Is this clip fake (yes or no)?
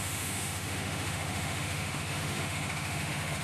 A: yes